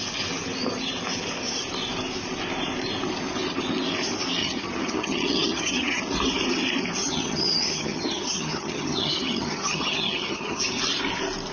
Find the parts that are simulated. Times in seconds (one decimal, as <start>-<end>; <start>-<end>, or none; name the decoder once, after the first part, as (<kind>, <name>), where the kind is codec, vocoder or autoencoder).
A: 4.4-6.0 (vocoder, HiFi-GAN); 7.0-10.6